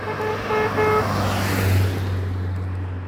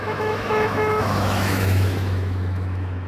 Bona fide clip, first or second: first